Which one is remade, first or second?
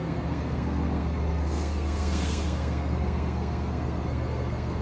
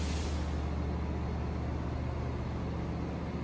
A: first